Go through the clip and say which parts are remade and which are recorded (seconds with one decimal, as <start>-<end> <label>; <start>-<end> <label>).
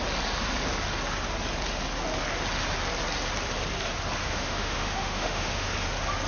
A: 0.0-4.2 recorded; 4.2-5.7 remade; 5.7-6.3 recorded